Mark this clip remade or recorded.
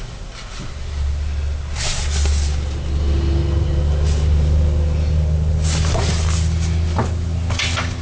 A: recorded